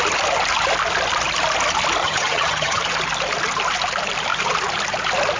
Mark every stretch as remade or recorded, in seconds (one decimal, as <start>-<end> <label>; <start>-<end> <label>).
0.0-2.0 recorded; 2.0-2.8 remade; 2.8-5.4 recorded